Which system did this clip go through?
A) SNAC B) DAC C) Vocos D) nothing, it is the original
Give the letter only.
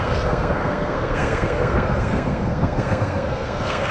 A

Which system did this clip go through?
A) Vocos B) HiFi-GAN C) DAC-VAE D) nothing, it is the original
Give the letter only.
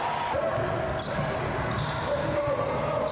D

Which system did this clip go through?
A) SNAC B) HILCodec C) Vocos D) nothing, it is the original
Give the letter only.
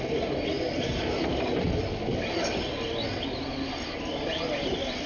D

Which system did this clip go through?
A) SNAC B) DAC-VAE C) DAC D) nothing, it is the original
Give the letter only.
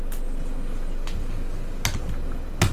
D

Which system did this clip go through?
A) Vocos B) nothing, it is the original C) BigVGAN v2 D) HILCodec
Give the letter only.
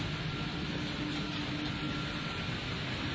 B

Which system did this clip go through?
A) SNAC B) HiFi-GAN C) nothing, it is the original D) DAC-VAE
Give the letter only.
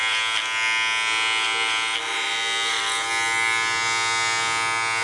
C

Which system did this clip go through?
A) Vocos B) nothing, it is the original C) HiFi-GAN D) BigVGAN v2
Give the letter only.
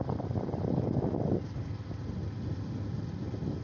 B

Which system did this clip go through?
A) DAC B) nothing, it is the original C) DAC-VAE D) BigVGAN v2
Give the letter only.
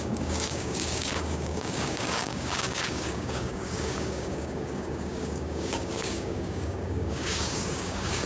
A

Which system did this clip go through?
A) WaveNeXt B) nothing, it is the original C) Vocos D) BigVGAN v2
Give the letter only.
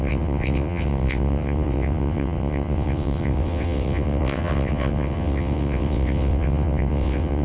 A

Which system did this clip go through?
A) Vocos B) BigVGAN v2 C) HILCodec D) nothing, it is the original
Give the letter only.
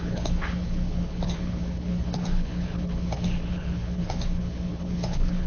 C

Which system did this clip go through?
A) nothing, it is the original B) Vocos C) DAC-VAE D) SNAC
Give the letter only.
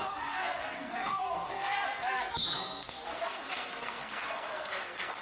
D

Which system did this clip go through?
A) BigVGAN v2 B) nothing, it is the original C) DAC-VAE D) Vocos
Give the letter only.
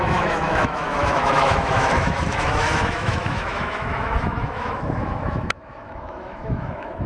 C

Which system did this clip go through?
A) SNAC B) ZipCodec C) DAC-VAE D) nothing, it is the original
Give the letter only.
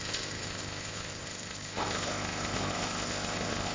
B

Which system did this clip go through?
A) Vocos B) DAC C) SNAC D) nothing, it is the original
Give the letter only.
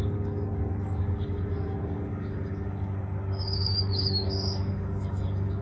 B